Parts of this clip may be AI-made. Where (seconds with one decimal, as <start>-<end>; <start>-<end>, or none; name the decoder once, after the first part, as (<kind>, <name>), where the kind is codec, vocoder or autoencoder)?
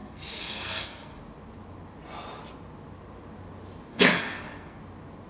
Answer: 0.0-1.2 (codec, SNAC); 3.9-4.8